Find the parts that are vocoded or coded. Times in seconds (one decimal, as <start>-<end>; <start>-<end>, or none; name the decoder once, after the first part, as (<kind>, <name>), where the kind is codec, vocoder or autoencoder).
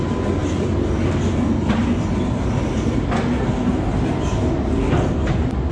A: none